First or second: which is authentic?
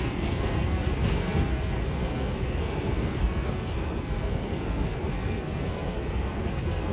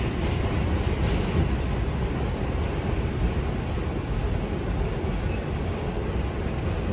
second